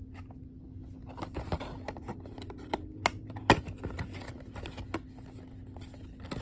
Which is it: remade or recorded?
recorded